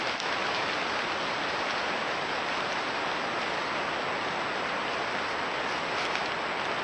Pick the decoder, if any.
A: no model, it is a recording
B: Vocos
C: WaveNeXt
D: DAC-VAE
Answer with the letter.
A